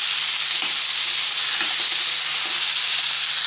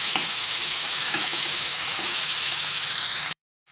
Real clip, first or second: first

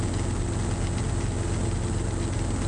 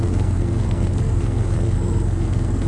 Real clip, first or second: first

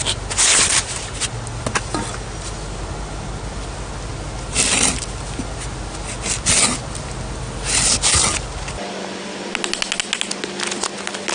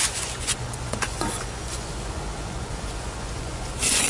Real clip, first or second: first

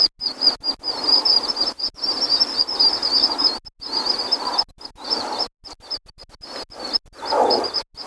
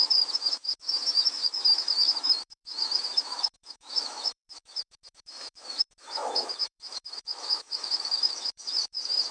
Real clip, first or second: first